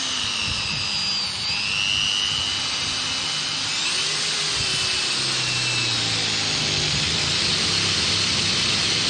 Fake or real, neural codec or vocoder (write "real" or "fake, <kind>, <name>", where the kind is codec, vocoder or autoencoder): real